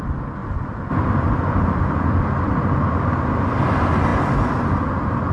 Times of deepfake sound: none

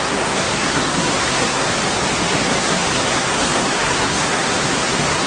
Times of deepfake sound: 0.0-1.7; 2.3-5.3

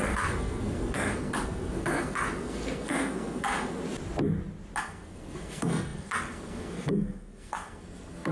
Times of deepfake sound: 0.0-3.8; 4.8-8.3

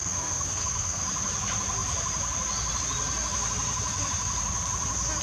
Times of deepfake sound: 0.0-1.0

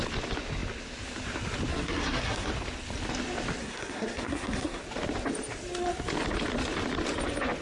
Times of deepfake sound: 1.7-2.5; 3.6-4.8

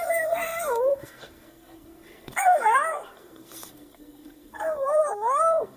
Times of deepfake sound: 0.0-5.8

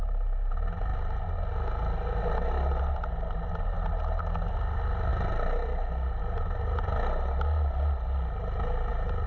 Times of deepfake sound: none

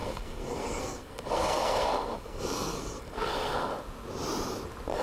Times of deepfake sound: 0.0-3.7